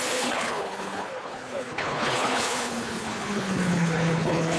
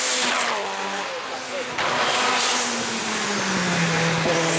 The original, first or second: second